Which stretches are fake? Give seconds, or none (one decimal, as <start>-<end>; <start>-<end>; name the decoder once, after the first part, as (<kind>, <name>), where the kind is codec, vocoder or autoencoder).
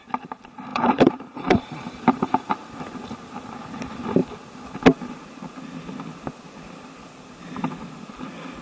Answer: 0.7-2.8 (vocoder, BigVGAN v2)